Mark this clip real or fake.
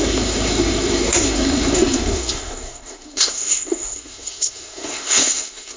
fake